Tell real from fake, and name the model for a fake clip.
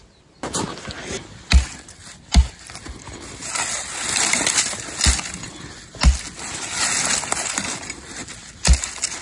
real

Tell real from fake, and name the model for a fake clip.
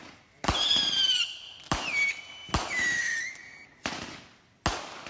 real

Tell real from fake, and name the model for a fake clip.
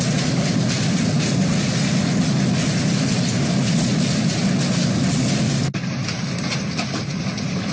real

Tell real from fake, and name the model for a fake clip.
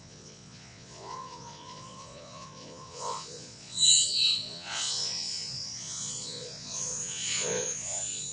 fake, vocoder, Vocos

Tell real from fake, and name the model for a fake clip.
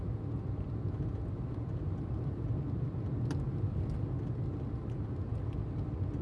real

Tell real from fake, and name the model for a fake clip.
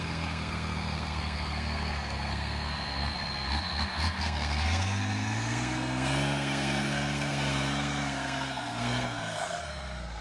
fake, codec, SNAC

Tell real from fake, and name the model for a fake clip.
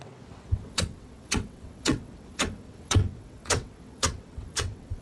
fake, vocoder, WaveNeXt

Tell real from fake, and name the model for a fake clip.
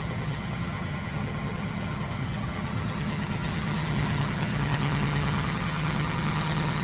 fake, vocoder, HiFi-GAN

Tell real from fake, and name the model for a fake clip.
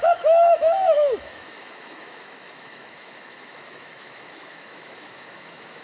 fake, autoencoder, DAC-VAE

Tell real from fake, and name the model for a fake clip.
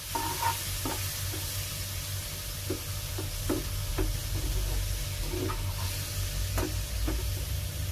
real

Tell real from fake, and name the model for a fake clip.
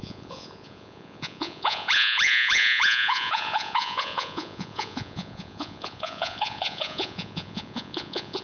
fake, vocoder, Vocos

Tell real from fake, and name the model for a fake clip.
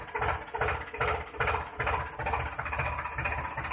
real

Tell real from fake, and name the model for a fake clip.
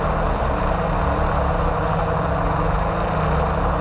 real